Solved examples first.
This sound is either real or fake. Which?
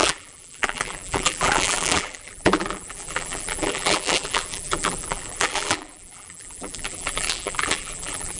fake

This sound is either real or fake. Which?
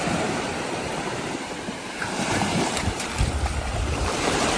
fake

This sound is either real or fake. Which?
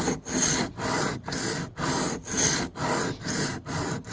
real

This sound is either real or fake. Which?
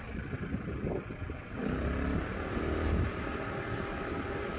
real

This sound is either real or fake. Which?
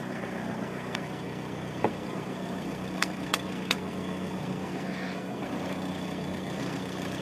fake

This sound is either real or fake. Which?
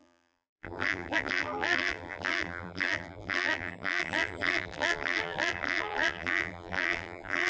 fake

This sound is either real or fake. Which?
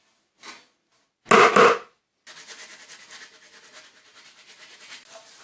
real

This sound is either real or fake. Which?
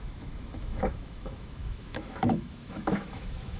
fake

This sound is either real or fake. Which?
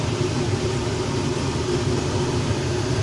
real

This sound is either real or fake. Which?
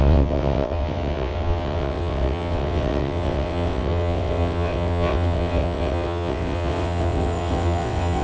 fake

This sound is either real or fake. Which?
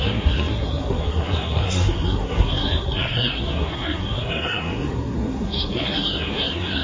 fake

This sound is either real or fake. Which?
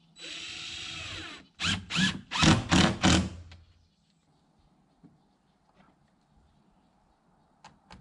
real